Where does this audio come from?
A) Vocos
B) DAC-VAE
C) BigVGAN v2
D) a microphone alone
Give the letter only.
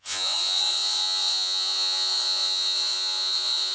A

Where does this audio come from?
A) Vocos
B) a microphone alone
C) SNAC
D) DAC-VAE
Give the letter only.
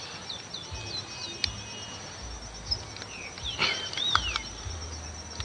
B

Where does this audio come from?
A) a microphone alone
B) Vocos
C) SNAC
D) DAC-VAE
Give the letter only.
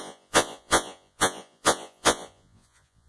B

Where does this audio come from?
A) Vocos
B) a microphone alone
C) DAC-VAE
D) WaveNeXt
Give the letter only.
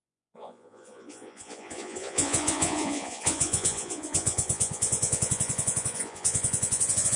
A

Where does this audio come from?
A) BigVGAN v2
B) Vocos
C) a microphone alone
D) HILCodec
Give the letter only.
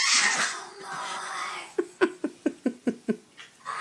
B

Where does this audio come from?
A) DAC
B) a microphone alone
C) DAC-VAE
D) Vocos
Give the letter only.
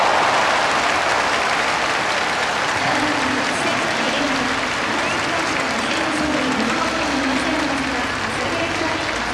B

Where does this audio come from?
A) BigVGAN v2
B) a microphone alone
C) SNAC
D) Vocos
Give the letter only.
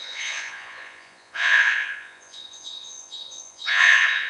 D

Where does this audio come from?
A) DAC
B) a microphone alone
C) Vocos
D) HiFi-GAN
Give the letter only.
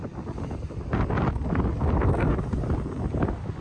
B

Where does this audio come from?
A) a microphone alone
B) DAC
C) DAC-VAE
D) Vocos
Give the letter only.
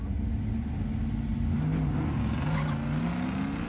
A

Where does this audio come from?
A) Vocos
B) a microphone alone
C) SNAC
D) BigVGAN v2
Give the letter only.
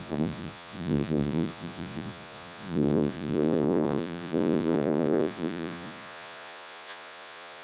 A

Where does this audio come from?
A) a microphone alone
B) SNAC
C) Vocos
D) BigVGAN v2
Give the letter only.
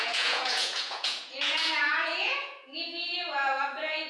C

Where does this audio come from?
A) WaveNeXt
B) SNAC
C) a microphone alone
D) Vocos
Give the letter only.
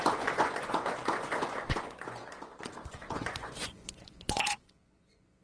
D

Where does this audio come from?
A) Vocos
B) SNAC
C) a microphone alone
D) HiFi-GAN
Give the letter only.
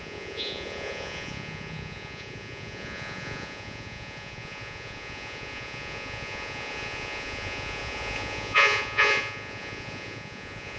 A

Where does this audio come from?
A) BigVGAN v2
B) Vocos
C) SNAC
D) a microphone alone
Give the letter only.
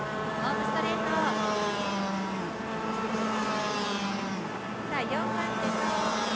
D